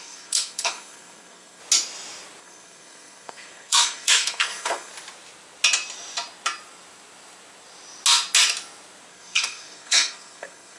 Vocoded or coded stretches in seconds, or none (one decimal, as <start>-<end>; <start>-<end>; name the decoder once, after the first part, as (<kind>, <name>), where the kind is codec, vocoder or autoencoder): 0.0-1.6 (codec, SNAC); 2.4-4.9; 9.1-10.8